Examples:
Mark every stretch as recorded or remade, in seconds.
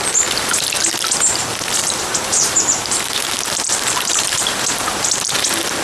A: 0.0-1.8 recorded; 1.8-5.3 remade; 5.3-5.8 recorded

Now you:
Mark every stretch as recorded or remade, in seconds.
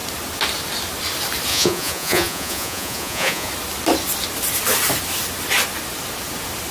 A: 0.0-1.5 recorded; 1.5-3.5 remade; 3.5-6.7 recorded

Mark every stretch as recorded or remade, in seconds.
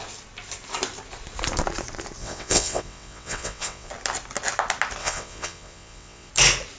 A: 0.0-2.2 recorded; 2.2-3.9 remade; 3.9-5.0 recorded; 5.0-6.3 remade; 6.3-6.8 recorded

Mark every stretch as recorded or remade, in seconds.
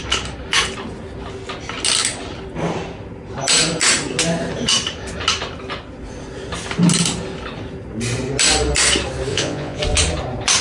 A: 0.0-9.3 recorded; 9.3-9.8 remade; 9.8-10.6 recorded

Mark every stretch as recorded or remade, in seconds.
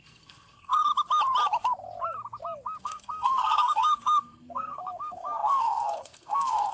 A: 0.0-0.9 remade; 0.9-2.8 recorded; 2.8-6.7 remade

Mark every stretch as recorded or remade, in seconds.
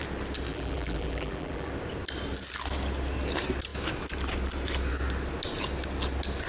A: 0.0-0.5 recorded; 0.5-1.7 remade; 1.7-6.5 recorded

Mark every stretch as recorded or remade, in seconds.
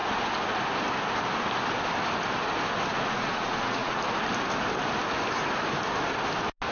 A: 0.0-2.9 recorded; 2.9-4.0 remade; 4.0-6.7 recorded